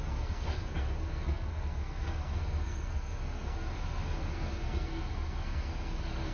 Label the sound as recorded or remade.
remade